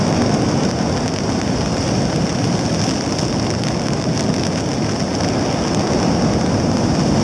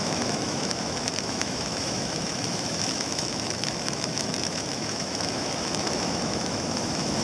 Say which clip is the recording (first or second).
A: first